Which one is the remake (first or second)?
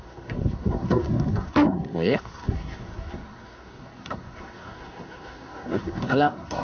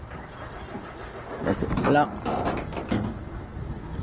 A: first